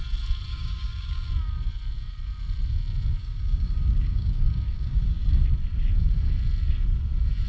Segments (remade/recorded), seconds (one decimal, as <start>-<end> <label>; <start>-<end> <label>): 0.0-0.5 recorded; 0.5-1.3 remade; 1.3-3.2 recorded; 3.2-5.4 remade; 5.4-7.5 recorded